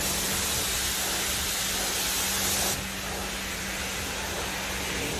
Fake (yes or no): no